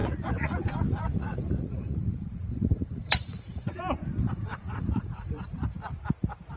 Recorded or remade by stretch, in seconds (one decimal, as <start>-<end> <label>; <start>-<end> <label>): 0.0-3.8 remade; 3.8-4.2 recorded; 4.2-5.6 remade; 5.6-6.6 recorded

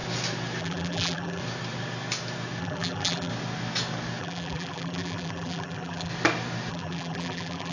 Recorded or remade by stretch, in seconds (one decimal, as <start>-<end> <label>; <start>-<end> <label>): 0.0-0.6 recorded; 0.6-1.4 remade; 1.4-2.6 recorded; 2.6-3.3 remade; 3.3-4.2 recorded; 4.2-6.1 remade; 6.1-6.7 recorded; 6.7-7.7 remade

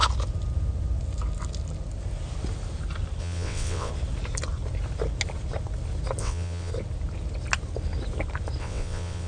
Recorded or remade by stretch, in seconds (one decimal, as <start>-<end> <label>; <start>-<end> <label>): 0.0-3.2 recorded; 3.2-3.9 remade; 3.9-6.2 recorded; 6.2-6.7 remade; 6.7-8.6 recorded; 8.6-9.3 remade

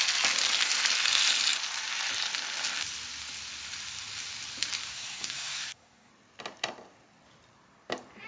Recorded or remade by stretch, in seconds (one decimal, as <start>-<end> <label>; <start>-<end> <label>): 0.0-4.9 recorded; 4.9-6.1 remade; 6.1-8.3 recorded

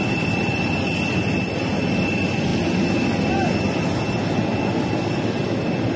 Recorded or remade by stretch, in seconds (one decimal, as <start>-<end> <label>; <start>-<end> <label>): 0.0-6.0 recorded

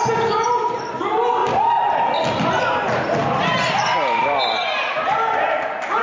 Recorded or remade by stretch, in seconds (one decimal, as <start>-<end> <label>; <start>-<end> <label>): 0.0-6.0 recorded